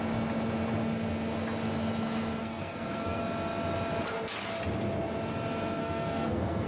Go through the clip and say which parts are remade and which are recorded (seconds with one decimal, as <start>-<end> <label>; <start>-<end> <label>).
0.0-2.4 recorded; 2.4-3.2 remade; 3.2-5.8 recorded; 5.8-6.7 remade